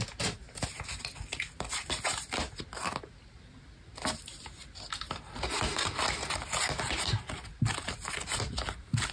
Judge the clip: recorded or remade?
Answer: recorded